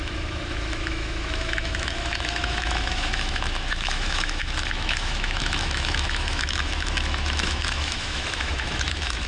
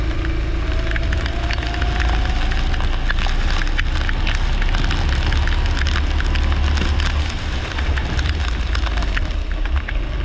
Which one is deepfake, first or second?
first